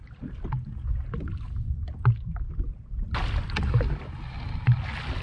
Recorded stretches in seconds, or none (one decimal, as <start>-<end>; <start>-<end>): 0.0-5.2